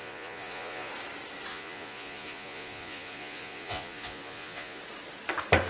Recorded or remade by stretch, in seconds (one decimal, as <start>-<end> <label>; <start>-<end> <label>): 0.0-0.9 remade; 0.9-1.5 recorded; 1.5-4.8 remade; 4.8-5.7 recorded